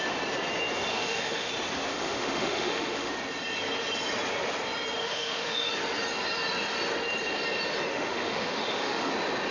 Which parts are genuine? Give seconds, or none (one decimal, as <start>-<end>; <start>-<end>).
0.0-0.9; 1.5-1.9; 3.1-5.0; 5.7-7.9; 9.1-9.5